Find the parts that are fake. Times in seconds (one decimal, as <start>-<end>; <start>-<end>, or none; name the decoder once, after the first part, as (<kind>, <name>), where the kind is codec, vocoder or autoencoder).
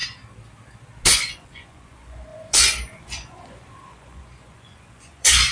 1.1-5.5 (vocoder, Vocos)